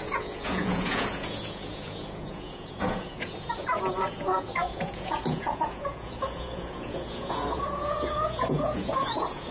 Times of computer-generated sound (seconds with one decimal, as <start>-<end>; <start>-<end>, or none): 0.0-9.5

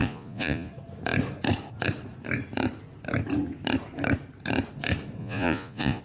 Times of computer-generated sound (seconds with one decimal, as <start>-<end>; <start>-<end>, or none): 0.0-0.7; 5.2-6.0

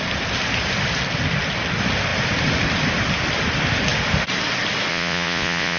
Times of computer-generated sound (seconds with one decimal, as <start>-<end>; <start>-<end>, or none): 4.9-5.8

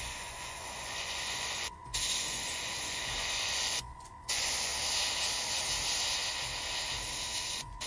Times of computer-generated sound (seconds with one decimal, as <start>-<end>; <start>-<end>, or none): 0.0-4.7; 7.5-7.9